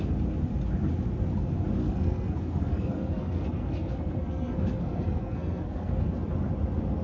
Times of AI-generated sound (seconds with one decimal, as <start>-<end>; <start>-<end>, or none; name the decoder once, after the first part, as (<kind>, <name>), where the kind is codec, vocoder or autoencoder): 1.8-6.0 (codec, SNAC)